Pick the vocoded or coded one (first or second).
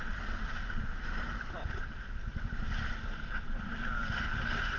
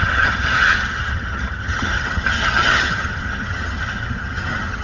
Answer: second